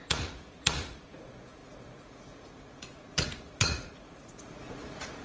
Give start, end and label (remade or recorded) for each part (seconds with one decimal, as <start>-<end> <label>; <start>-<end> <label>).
0.0-5.2 remade